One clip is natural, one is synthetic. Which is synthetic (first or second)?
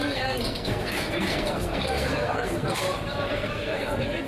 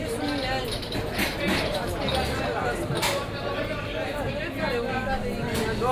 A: first